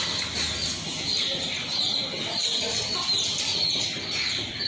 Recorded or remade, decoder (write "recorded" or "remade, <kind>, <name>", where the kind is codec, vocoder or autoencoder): recorded